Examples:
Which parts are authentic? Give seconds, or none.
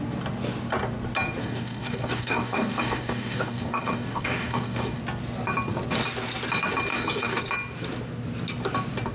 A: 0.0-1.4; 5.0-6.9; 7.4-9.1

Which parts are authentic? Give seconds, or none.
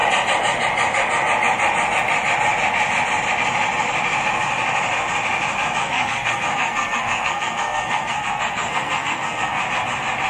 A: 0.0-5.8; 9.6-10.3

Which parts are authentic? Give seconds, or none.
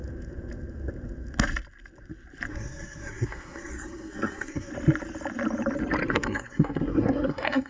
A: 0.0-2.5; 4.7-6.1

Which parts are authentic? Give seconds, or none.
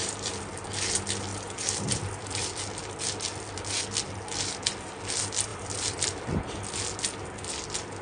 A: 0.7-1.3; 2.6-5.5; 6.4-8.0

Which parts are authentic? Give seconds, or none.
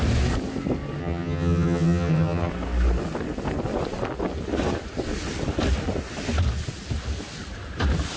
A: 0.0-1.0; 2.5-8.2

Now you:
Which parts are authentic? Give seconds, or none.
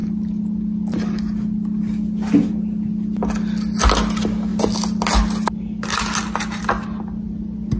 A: 0.0-7.8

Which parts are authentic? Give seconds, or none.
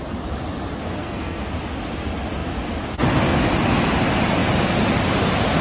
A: 0.0-0.9; 1.4-5.6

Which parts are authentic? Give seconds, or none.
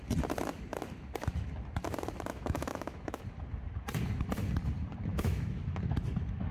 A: 0.0-2.3; 3.2-5.1; 5.6-6.5